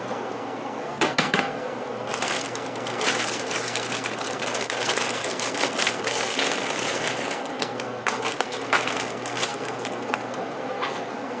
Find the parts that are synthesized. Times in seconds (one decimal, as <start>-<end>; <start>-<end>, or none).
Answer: 0.0-11.4